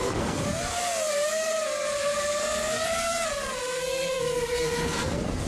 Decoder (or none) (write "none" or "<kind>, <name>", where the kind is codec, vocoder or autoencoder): codec, SNAC